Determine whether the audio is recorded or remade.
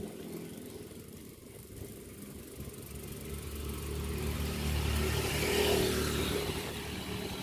recorded